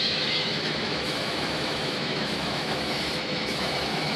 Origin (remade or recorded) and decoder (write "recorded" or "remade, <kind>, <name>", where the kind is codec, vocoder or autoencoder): remade, autoencoder, DAC-VAE